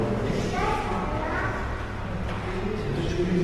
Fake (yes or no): no